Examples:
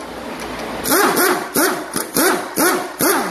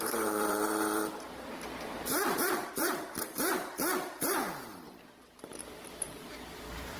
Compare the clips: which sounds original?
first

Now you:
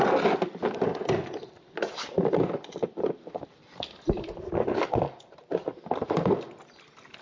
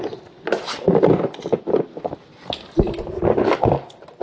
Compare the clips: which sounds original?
second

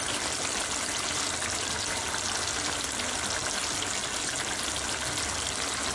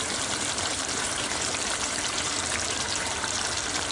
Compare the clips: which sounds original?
first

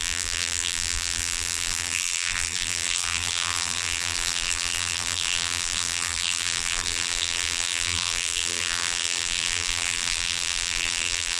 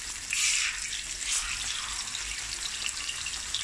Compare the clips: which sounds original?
second